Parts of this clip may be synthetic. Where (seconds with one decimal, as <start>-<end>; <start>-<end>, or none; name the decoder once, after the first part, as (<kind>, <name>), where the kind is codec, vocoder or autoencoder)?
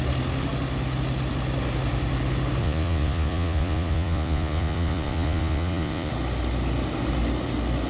2.6-6.1 (vocoder, Vocos)